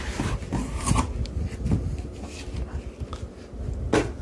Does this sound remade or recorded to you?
recorded